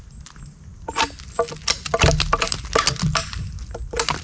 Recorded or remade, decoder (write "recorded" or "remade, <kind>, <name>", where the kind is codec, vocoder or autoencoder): recorded